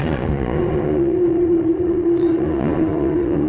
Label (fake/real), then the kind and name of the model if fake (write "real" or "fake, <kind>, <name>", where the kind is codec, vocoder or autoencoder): fake, vocoder, Vocos